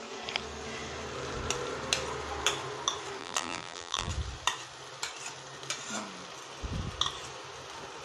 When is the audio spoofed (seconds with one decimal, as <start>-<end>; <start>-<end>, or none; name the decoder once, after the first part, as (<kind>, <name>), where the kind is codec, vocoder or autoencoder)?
3.2-4.1 (vocoder, BigVGAN v2)